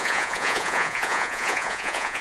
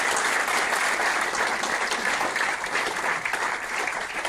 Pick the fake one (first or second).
first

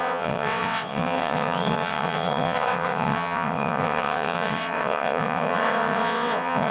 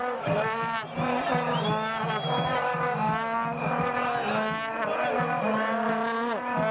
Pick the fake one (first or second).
first